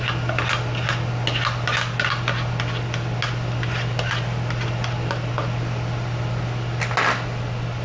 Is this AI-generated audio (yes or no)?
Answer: no